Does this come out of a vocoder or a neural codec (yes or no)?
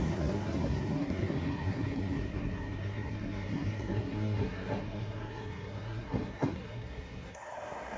yes